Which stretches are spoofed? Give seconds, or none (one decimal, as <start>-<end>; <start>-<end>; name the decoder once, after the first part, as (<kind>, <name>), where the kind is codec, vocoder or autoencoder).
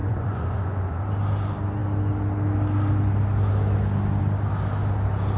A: 0.0-1.0 (vocoder, Vocos)